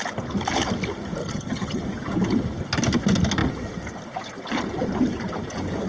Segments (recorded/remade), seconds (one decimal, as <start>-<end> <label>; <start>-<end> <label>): 0.0-1.2 recorded; 1.2-1.8 remade; 1.8-5.9 recorded